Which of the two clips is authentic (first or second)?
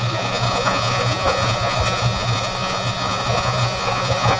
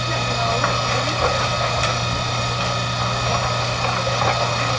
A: second